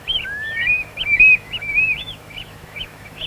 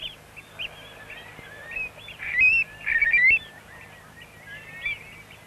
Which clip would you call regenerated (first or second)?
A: first